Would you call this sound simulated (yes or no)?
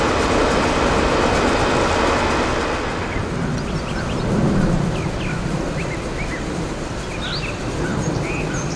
no